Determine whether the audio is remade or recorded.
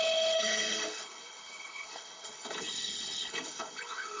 remade